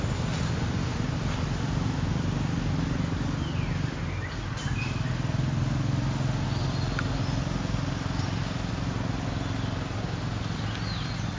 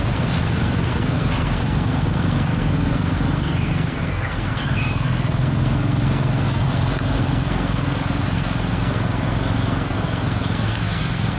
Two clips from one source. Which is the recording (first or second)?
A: first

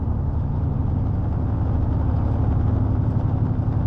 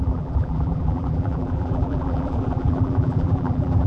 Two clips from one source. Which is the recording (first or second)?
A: first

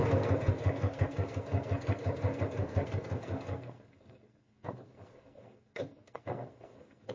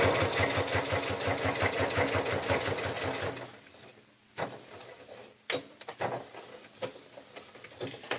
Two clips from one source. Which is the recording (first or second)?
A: second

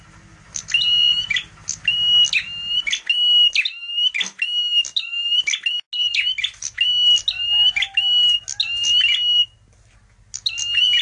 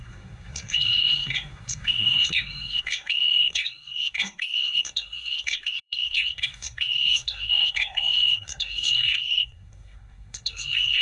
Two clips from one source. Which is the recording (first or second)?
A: first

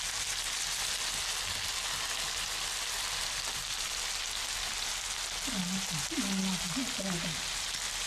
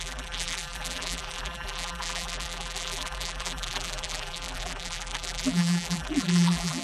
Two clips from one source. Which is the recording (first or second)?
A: first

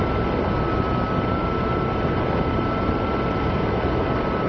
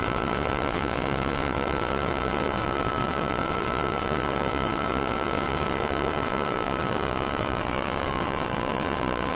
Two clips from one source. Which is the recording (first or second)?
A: first